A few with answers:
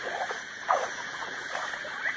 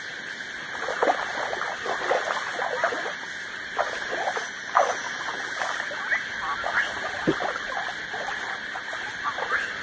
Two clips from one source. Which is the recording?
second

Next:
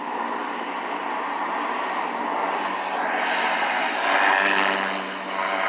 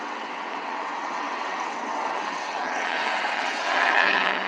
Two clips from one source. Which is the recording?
first